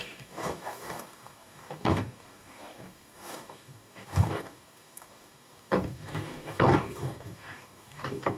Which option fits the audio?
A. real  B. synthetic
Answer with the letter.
B